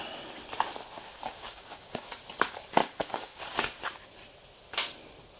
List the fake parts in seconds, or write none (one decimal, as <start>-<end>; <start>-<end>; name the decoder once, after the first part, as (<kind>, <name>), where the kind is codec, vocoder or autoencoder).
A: 1.1-2.1 (codec, DAC); 2.8-3.4